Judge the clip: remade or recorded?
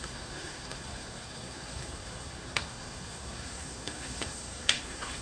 remade